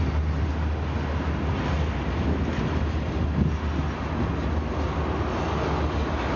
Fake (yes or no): no